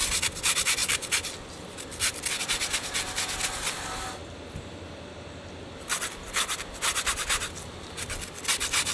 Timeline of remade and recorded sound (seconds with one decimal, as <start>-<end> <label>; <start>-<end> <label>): 0.0-8.9 recorded